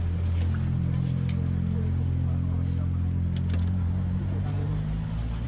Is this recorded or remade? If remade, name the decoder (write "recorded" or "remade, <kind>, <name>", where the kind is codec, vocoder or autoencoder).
recorded